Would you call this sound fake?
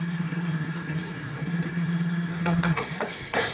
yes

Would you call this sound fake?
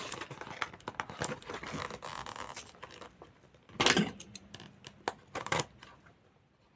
no